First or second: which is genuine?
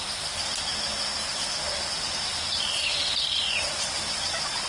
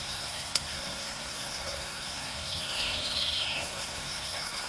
first